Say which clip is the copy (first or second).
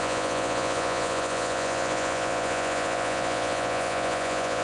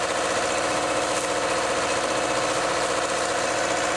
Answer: first